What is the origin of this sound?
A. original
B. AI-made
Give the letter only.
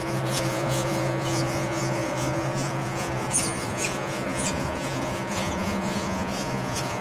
B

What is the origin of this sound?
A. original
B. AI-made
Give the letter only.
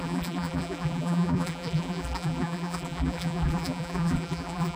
B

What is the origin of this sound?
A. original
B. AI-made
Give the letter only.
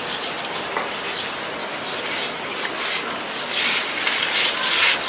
A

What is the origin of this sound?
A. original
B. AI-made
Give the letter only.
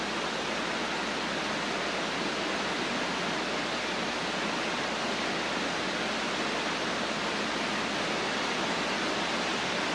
A